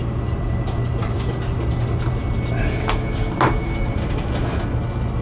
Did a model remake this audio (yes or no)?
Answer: no